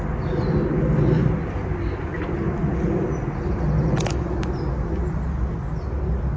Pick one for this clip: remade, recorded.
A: recorded